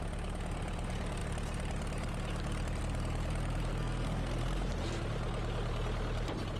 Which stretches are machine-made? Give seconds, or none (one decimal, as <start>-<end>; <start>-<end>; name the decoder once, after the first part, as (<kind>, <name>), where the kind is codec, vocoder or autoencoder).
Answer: 3.7-4.3 (codec, SNAC)